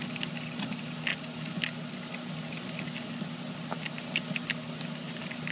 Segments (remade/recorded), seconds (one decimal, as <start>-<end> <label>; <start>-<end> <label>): 0.0-5.5 recorded